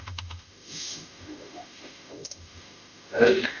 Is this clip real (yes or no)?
no